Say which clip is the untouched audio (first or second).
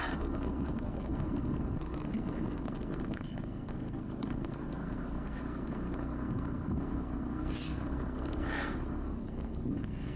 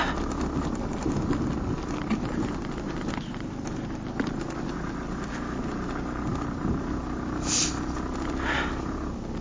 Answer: second